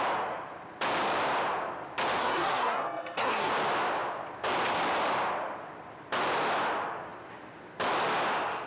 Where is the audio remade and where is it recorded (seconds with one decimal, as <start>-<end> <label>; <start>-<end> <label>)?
0.0-2.2 recorded; 2.2-3.5 remade; 3.5-8.7 recorded